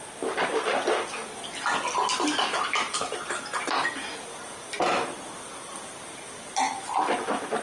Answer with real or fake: real